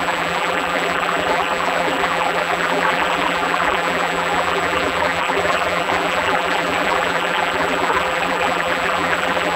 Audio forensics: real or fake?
fake